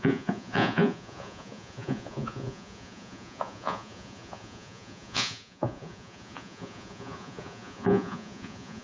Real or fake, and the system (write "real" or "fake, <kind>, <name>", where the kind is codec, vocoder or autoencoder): fake, vocoder, Vocos